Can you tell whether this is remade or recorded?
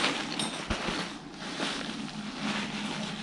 recorded